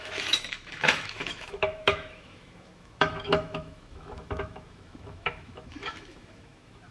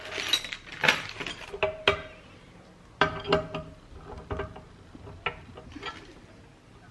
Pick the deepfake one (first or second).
first